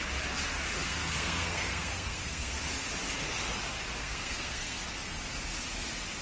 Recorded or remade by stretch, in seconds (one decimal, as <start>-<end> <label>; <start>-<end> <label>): 0.0-0.8 recorded; 0.8-2.6 remade; 2.6-4.0 recorded; 4.0-4.8 remade; 4.8-6.2 recorded